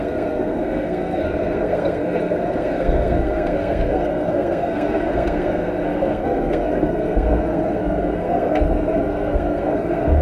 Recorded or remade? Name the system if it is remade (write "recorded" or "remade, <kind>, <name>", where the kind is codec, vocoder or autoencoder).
remade, codec, SNAC